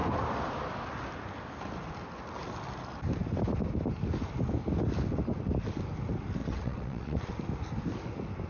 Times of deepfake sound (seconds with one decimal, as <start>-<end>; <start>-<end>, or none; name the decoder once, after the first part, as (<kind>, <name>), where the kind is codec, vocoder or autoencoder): 6.4-7.3 (vocoder, WaveNeXt)